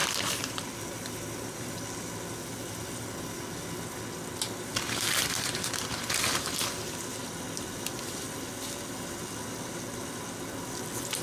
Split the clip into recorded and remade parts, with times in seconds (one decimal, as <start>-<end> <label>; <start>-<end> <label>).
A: 0.0-11.2 recorded